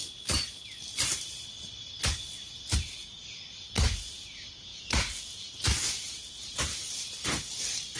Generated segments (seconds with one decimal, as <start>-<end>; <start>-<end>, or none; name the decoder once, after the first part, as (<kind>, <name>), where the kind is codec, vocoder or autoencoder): none